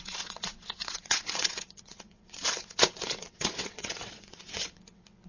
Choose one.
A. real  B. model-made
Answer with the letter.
B